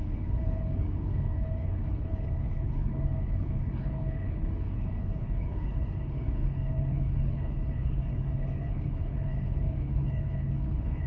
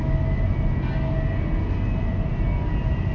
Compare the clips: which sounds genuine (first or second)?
second